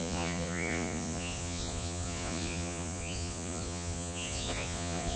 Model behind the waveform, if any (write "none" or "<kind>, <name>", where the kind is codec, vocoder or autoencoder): vocoder, Vocos